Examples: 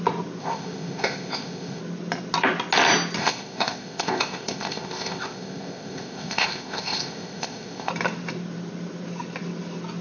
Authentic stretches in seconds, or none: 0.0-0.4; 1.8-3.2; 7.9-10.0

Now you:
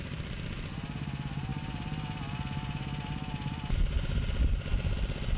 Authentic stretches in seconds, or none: 0.0-5.4

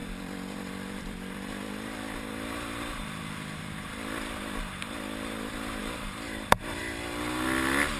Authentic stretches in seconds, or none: none

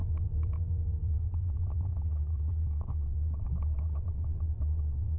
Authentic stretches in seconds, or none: 0.0-1.9

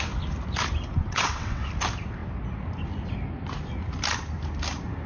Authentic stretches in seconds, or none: 0.0-0.9; 1.7-5.1

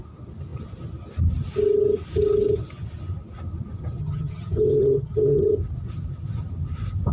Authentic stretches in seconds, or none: 0.0-4.0; 5.5-7.1